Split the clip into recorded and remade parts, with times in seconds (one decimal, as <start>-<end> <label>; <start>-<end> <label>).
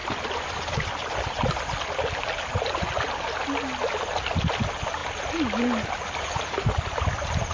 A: 0.0-7.5 recorded